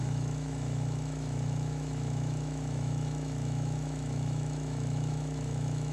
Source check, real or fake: fake